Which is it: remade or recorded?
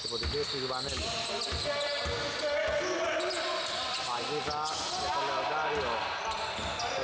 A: recorded